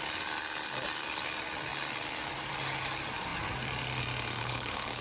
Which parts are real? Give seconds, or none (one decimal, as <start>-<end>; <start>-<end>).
0.0-4.4